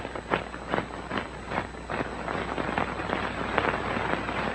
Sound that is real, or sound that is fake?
real